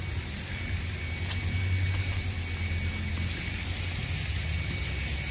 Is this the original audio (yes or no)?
yes